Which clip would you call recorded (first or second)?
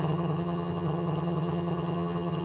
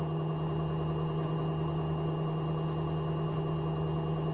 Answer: second